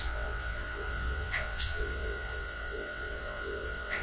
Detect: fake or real fake